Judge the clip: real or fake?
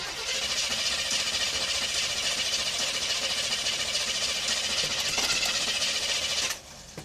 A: real